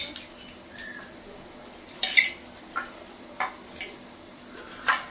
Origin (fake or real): real